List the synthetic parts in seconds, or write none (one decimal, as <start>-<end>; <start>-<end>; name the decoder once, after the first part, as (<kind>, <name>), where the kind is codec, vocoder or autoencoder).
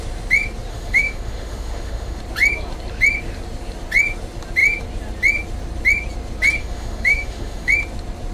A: 0.7-2.2 (autoencoder, DAC-VAE); 6.6-7.7